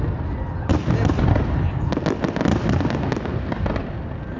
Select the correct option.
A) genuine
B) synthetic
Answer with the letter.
A